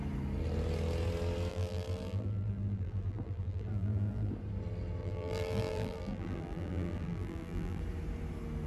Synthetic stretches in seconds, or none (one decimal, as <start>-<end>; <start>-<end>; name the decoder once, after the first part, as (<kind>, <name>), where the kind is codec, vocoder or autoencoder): 1.5-4.3 (vocoder, BigVGAN v2); 5.0-7.8